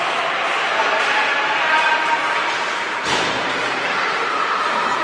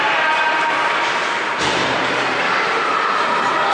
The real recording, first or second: second